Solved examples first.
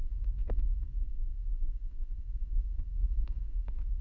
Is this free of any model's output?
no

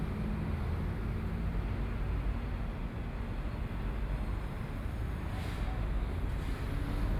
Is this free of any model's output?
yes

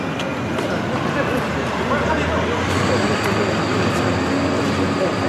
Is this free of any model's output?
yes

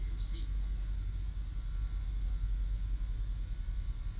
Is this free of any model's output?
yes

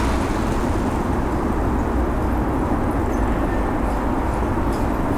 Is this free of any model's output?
yes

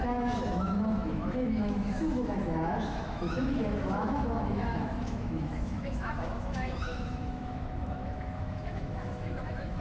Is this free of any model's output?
no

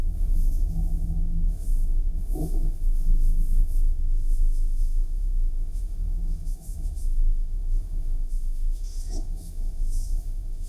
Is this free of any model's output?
no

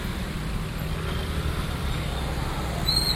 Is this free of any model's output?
yes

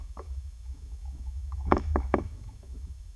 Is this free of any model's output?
no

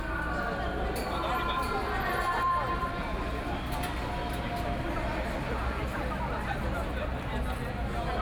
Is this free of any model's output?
yes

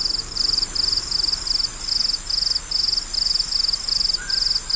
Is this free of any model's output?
yes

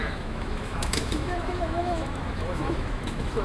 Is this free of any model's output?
no